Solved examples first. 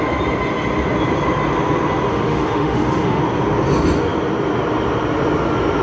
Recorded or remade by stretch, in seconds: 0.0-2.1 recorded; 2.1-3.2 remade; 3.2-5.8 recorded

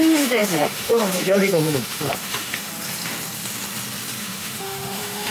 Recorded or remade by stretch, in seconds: 0.0-2.7 remade; 2.7-4.2 recorded; 4.2-5.3 remade

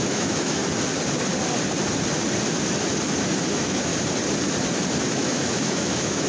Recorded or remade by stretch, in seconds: 0.0-0.6 remade; 0.6-3.5 recorded; 3.5-3.9 remade; 3.9-5.0 recorded; 5.0-6.3 remade

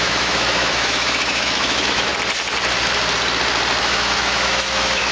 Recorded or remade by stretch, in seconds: 0.0-2.1 remade; 2.1-3.8 recorded; 3.8-5.1 remade

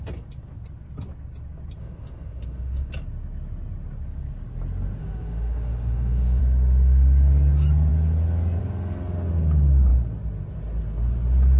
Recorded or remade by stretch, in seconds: 0.0-1.8 recorded; 1.8-2.9 remade; 2.9-5.0 recorded; 5.0-6.4 remade; 6.4-11.6 recorded

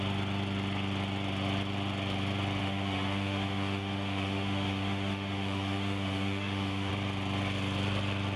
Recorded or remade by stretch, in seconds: 0.0-2.6 recorded; 2.6-6.9 remade; 6.9-8.4 recorded

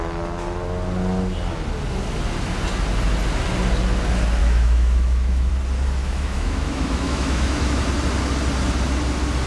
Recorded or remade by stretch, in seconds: 0.0-4.4 recorded; 4.4-5.5 remade; 5.5-6.0 recorded; 6.0-7.8 remade; 7.8-9.5 recorded

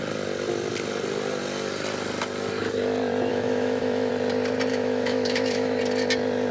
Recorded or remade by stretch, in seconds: 0.0-3.3 recorded; 3.3-4.1 remade; 4.1-4.7 recorded; 4.7-5.8 remade; 5.8-6.5 recorded